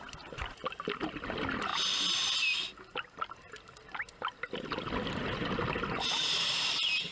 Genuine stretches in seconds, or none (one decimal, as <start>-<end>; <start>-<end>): 0.0-7.1